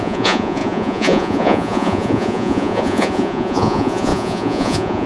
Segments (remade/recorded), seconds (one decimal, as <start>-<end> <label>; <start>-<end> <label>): 0.0-5.1 remade